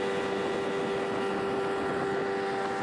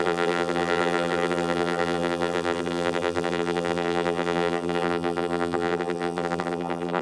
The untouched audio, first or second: first